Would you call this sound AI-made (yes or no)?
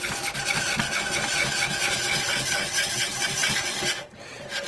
no